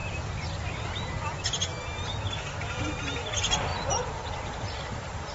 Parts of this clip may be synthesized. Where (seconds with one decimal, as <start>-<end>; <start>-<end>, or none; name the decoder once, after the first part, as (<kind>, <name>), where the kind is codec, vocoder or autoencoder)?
2.8-3.7 (vocoder, BigVGAN v2); 4.3-5.3